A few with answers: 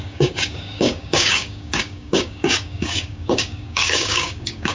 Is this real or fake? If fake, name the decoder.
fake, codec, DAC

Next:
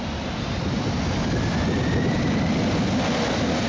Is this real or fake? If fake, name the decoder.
real